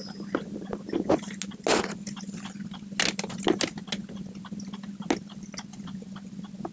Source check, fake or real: real